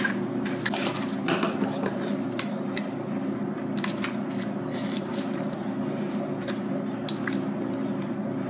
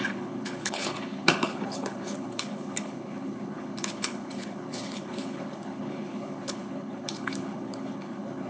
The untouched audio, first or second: first